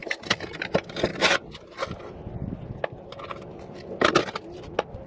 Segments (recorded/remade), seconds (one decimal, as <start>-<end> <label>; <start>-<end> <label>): 0.0-5.1 recorded